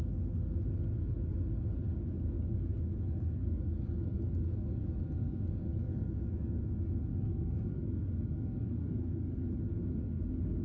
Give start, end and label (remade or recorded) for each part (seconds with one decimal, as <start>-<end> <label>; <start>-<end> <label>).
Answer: 0.0-1.9 recorded; 1.9-6.6 remade; 6.6-7.1 recorded; 7.1-9.5 remade; 9.5-10.6 recorded